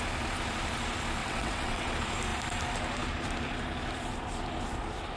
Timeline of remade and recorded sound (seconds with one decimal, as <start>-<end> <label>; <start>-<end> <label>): 0.0-1.2 recorded; 1.2-1.9 remade; 1.9-5.2 recorded